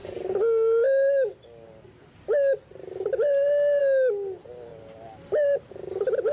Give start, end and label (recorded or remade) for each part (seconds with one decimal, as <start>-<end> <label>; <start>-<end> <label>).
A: 0.0-4.7 recorded; 4.7-5.6 remade; 5.6-6.3 recorded